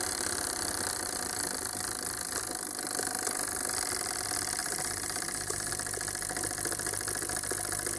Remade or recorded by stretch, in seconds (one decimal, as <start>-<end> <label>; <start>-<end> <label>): 0.0-4.6 recorded; 4.6-5.7 remade; 5.7-8.0 recorded